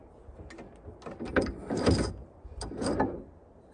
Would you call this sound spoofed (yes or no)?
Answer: no